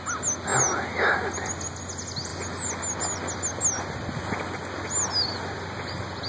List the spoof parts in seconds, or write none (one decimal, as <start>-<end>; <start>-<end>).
none